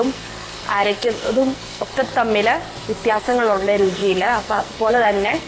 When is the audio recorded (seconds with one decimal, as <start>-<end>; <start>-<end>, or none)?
2.1-3.1